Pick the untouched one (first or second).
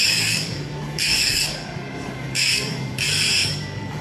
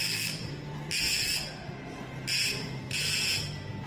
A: second